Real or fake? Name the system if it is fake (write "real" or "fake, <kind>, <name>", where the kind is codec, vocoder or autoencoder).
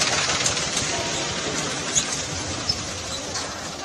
fake, vocoder, BigVGAN v2